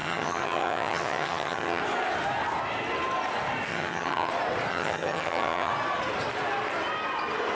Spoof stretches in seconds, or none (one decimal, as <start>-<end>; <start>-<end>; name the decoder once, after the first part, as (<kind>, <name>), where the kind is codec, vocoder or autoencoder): 0.0-1.8 (vocoder, HiFi-GAN); 3.7-4.3; 4.7-5.7